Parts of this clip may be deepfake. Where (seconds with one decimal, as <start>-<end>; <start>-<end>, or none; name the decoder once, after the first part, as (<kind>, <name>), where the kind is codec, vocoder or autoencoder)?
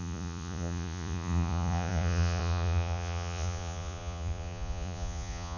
0.0-5.6 (vocoder, Vocos)